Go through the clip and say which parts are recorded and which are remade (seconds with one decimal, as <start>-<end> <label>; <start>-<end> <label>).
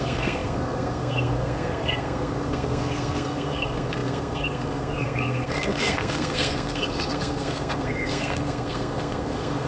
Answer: 0.0-9.7 remade